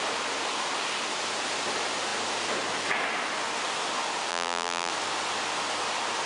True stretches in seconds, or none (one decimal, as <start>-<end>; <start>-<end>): 0.0-4.3; 4.9-6.3